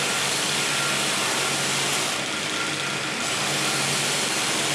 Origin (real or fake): real